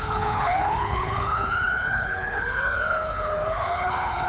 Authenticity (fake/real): fake